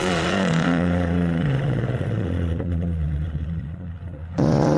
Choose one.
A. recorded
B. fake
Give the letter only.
B